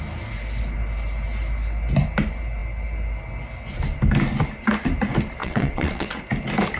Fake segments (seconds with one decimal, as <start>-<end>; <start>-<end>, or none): 5.4-6.2